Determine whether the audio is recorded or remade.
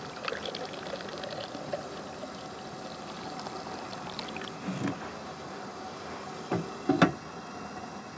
recorded